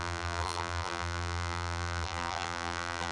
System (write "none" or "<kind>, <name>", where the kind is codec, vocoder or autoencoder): vocoder, BigVGAN v2